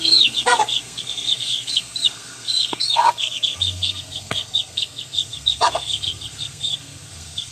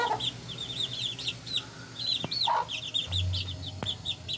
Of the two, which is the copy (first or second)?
first